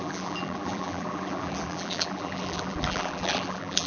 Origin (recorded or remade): remade